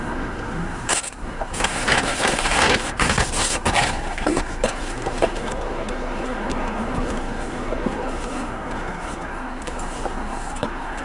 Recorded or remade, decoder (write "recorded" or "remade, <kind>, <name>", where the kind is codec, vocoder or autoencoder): remade, codec, SNAC